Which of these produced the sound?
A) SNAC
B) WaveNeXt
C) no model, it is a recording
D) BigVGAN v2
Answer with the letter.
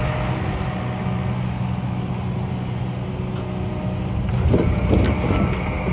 C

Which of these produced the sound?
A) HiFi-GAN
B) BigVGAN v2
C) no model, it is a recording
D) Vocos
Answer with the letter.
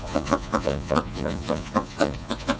D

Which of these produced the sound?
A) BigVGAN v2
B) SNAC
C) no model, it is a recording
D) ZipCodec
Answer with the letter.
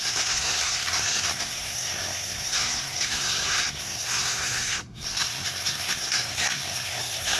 B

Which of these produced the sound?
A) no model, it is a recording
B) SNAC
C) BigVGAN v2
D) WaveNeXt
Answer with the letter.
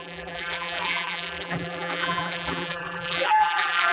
C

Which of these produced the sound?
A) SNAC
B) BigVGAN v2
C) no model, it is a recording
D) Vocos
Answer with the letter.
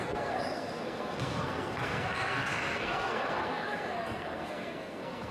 A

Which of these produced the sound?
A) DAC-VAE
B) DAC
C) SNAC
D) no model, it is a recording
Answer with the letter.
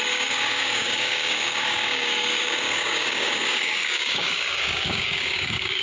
B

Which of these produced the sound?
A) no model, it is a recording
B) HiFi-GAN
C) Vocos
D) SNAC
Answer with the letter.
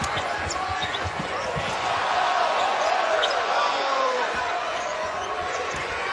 C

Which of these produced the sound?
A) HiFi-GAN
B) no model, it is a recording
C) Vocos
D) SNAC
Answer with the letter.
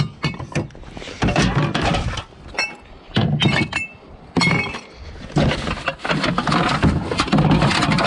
B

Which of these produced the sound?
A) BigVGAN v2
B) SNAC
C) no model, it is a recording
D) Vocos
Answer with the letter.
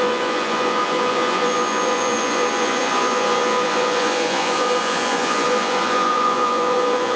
D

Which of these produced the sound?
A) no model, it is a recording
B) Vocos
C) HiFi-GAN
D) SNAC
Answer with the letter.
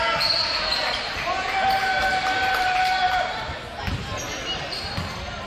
A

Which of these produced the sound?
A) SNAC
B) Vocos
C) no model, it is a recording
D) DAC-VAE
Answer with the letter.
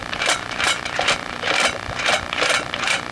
C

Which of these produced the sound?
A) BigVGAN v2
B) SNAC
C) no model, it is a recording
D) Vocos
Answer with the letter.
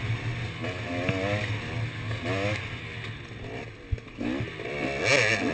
C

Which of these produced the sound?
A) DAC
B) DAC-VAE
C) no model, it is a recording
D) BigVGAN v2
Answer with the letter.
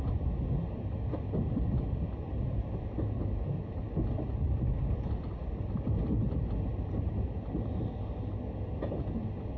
C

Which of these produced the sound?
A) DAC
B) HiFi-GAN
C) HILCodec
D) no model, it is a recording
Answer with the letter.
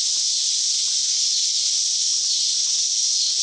D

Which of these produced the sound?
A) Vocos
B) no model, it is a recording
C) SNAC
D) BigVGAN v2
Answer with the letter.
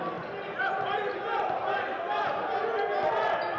B